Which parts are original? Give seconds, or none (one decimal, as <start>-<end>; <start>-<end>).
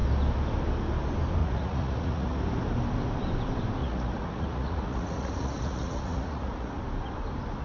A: 0.0-1.4; 2.4-3.8; 6.8-7.6